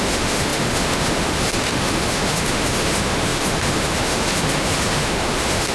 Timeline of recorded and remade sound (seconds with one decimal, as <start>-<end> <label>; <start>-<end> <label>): 0.0-5.7 remade